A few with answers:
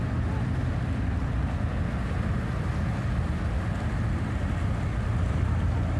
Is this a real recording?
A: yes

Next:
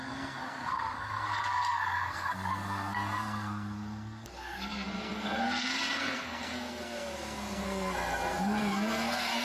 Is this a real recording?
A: no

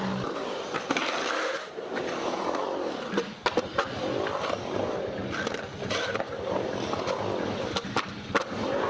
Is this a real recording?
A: yes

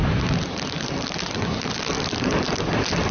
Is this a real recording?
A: yes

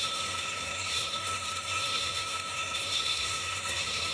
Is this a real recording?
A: no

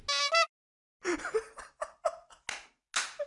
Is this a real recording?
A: yes